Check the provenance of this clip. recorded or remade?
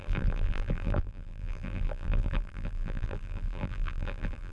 remade